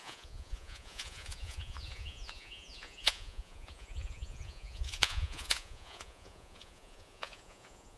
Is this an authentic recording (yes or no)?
no